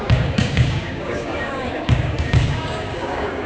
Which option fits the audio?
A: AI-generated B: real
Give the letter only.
A